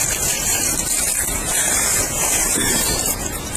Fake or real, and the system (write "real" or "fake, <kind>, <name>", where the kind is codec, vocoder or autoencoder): fake, vocoder, BigVGAN v2